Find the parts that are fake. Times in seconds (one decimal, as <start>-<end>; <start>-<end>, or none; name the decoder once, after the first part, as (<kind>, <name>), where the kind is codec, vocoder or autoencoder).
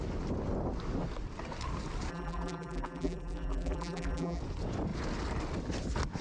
2.1-4.4 (vocoder, BigVGAN v2)